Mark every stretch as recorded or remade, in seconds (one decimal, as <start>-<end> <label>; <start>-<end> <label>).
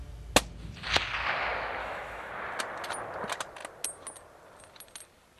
0.0-1.8 recorded; 1.8-2.3 remade; 2.3-5.4 recorded